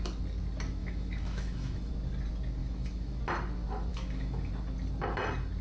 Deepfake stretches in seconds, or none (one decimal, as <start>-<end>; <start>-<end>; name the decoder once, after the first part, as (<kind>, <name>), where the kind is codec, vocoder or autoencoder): 0.8-1.9 (autoencoder, DAC-VAE); 2.6-3.2; 3.9-4.5